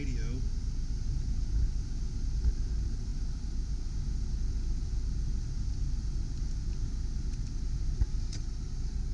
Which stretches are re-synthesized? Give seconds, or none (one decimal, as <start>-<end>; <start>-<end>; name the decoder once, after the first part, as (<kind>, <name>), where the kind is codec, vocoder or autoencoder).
none